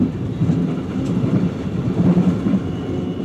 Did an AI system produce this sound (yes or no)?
no